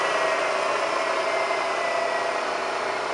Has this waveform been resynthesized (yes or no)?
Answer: no